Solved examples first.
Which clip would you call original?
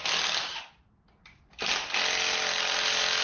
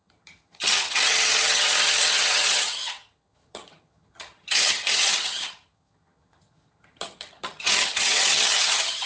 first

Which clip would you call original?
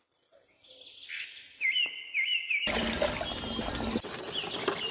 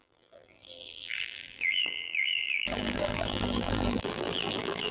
first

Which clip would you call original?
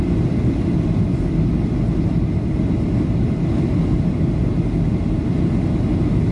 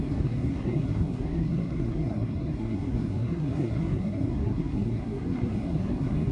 first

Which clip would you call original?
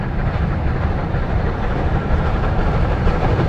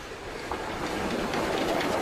second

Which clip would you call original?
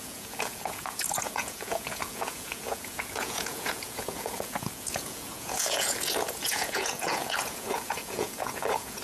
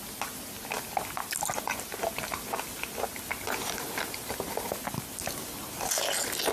second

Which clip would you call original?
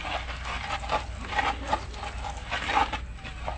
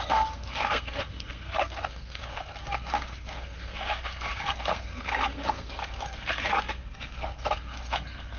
first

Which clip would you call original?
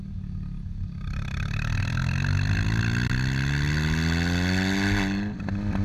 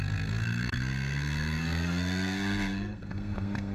first